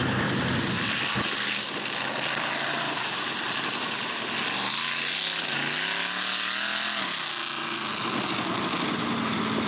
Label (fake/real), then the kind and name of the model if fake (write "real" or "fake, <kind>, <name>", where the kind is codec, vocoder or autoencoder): real